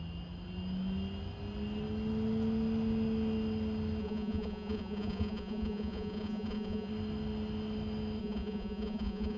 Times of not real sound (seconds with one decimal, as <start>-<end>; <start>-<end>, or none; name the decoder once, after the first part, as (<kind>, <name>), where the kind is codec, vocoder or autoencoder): 4.0-6.9 (vocoder, Vocos); 8.2-9.4